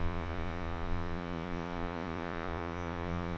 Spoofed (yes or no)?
yes